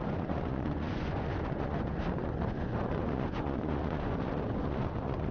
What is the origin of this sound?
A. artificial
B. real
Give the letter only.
A